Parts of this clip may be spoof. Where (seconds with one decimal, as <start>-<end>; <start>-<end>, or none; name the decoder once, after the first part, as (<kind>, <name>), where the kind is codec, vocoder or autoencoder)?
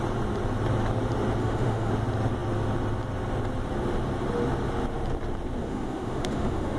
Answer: 1.4-1.9 (autoencoder, DAC-VAE); 5.6-6.8